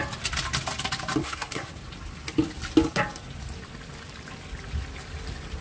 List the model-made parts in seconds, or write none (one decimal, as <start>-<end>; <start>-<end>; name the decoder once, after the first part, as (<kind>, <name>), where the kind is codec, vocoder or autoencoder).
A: 1.2-1.7 (codec, SNAC)